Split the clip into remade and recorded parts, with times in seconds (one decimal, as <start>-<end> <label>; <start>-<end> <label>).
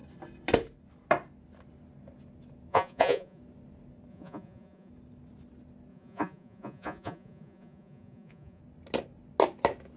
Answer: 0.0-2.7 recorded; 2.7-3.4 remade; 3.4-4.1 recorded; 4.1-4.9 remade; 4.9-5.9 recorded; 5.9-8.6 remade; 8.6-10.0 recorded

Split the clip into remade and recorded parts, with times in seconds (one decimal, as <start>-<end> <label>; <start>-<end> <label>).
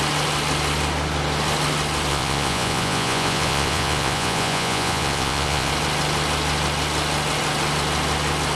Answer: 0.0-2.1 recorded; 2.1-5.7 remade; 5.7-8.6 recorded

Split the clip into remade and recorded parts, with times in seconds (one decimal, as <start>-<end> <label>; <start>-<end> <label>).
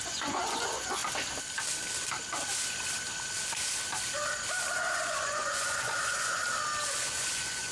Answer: 0.0-1.0 remade; 1.0-4.8 recorded; 4.8-6.4 remade; 6.4-7.0 recorded; 7.0-7.7 remade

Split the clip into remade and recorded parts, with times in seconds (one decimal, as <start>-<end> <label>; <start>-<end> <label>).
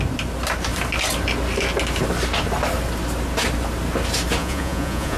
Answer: 0.0-4.4 recorded; 4.4-5.2 remade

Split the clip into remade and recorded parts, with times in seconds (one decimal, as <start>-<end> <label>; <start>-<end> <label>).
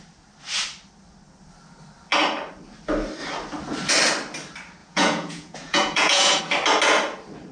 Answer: 0.0-4.8 recorded; 4.8-6.4 remade; 6.4-7.5 recorded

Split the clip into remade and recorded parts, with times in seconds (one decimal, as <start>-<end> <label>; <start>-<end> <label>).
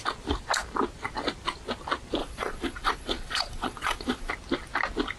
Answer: 0.0-2.2 recorded; 2.2-4.3 remade; 4.3-5.2 recorded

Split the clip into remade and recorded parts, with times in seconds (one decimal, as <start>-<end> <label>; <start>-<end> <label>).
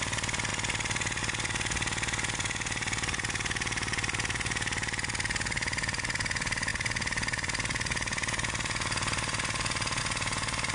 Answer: 0.0-10.7 recorded